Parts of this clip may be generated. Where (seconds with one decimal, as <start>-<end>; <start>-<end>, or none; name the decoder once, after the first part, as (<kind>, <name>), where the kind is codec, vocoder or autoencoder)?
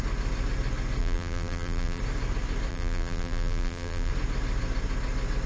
1.0-2.0 (vocoder, BigVGAN v2); 2.7-4.1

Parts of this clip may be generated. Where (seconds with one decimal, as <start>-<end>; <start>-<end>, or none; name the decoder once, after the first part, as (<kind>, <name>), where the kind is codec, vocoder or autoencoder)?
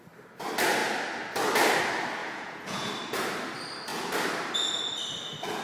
2.2-2.9 (vocoder, Vocos)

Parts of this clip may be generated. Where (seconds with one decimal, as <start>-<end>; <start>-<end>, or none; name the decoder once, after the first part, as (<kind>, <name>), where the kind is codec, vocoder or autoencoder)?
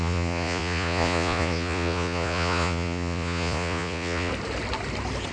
0.0-4.3 (vocoder, Vocos)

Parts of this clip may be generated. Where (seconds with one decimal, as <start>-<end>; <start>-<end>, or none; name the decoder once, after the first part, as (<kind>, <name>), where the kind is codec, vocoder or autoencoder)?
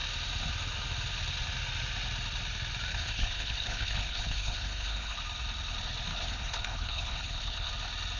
2.9-5.2 (codec, HILCodec); 6.1-7.7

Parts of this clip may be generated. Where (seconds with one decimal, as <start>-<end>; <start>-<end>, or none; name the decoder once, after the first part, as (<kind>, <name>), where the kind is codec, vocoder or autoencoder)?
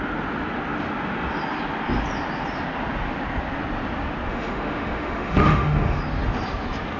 4.3-6.0 (autoencoder, DAC-VAE)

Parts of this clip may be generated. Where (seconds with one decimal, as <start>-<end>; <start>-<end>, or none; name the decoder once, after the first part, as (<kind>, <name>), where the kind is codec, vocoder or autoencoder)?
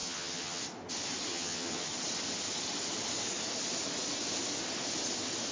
0.0-0.6 (vocoder, HiFi-GAN); 1.3-1.9